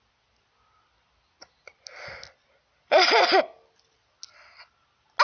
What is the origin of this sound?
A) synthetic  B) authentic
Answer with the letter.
B